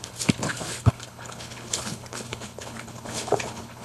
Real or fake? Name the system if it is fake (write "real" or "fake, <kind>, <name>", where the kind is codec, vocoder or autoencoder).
fake, codec, HILCodec